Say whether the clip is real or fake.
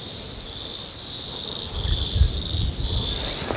real